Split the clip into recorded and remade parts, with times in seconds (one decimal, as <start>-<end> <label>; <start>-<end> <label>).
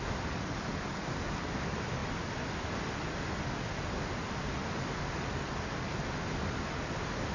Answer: 0.0-7.3 recorded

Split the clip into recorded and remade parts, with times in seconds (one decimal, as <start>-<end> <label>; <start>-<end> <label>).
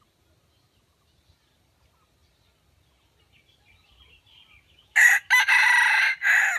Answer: 0.0-6.6 recorded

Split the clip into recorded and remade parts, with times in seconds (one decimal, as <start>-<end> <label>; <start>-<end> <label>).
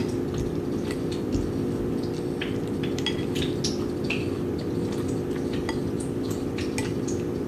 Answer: 0.0-7.5 recorded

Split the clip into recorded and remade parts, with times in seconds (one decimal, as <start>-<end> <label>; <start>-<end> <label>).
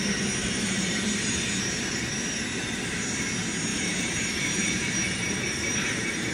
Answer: 0.0-0.4 recorded; 0.4-1.5 remade; 1.5-3.7 recorded; 3.7-6.3 remade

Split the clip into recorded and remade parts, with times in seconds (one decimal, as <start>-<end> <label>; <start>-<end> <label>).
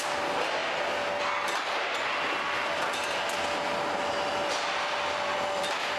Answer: 0.0-0.6 remade; 0.6-4.1 recorded; 4.1-6.0 remade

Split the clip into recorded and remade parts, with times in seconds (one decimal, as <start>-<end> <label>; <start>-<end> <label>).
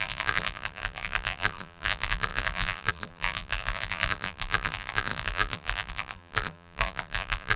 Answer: 0.0-7.6 remade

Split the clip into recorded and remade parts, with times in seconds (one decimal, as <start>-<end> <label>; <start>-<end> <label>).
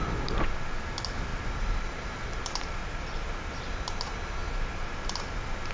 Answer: 0.0-1.3 recorded; 1.3-2.8 remade; 2.8-5.7 recorded